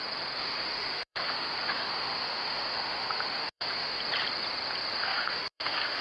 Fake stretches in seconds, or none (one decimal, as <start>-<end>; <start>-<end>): 0.4-4.0; 5.0-6.0